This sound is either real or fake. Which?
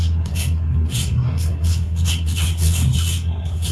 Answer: fake